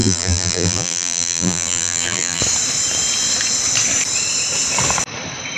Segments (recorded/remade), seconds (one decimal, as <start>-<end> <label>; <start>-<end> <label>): 0.0-2.4 remade; 2.4-5.6 recorded